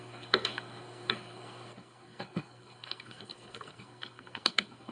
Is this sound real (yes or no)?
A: no